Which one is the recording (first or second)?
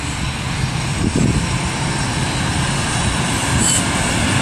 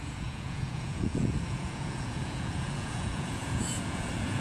first